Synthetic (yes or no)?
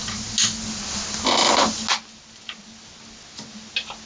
no